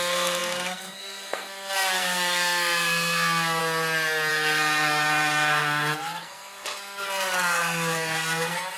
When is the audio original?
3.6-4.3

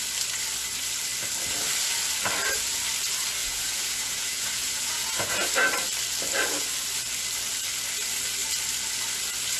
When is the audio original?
0.0-3.4; 5.5-9.6

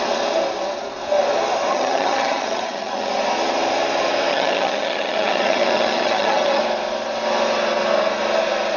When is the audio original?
0.0-1.7; 3.1-4.3; 6.6-8.8

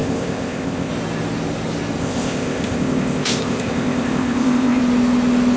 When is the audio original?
0.9-2.0; 4.8-5.6

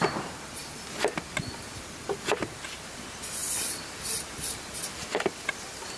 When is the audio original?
0.6-1.2

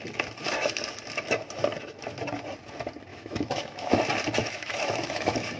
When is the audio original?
0.0-3.1; 3.9-4.4

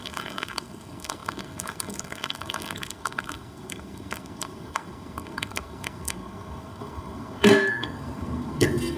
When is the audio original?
none